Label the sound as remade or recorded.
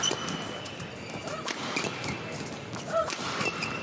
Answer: recorded